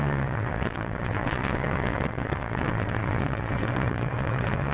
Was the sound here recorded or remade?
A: remade